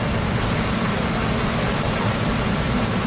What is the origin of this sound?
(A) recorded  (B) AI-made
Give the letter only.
A